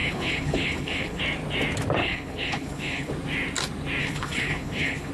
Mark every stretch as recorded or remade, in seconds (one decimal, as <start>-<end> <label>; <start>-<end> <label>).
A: 0.0-1.2 remade; 1.2-2.0 recorded; 2.0-3.1 remade; 3.1-4.0 recorded; 4.0-5.1 remade